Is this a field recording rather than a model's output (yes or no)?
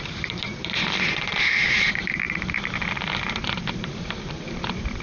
no